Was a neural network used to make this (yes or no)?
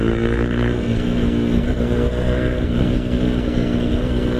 yes